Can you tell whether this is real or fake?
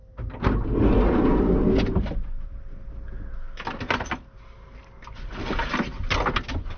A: real